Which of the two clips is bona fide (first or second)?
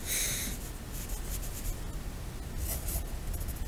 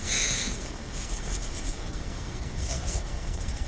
first